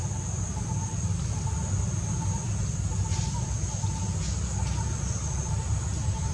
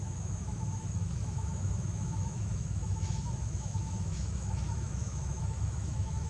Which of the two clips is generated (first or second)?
second